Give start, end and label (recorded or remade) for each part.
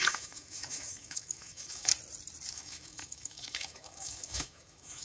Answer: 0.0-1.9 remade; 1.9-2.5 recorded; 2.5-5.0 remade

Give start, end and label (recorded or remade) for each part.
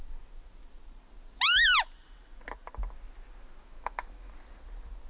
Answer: 0.0-3.6 recorded; 3.6-4.3 remade; 4.3-5.1 recorded